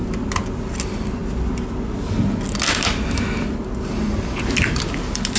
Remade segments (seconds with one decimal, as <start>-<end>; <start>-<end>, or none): none